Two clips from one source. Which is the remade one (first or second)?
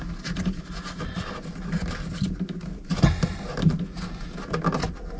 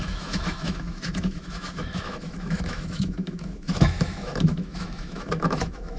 second